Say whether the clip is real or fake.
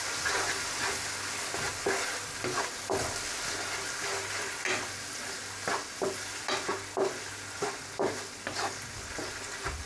real